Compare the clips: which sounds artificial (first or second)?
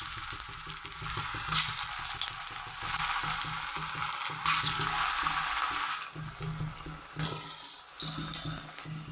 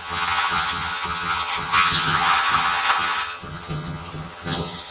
second